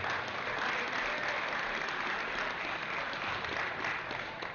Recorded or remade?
recorded